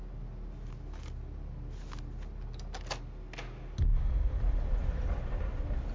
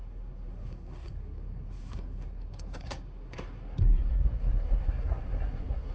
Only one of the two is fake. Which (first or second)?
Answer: second